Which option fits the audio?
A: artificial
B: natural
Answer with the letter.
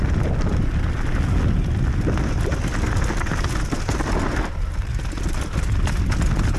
B